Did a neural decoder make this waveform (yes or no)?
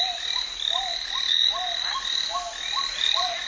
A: no